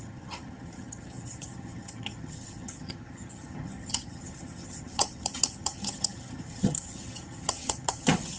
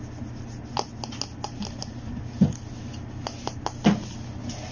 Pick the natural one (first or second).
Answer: second